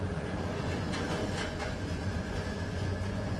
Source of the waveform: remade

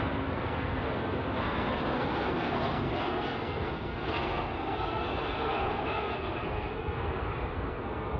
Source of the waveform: remade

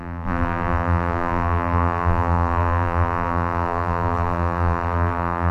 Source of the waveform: remade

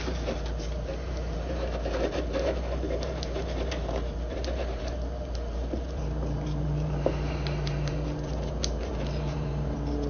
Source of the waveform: remade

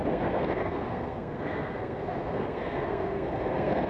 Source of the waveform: remade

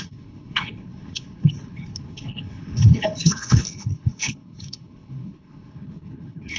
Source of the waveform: remade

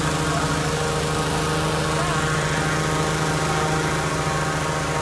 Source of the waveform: recorded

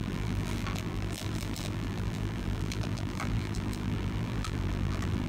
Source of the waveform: remade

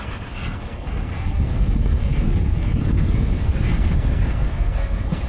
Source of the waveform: remade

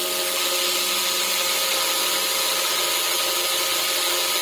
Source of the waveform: recorded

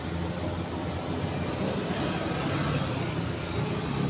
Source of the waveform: recorded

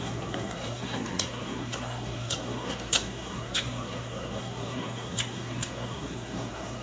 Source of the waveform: remade